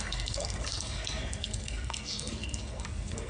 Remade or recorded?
remade